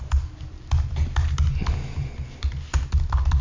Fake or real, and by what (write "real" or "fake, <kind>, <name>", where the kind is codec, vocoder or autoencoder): real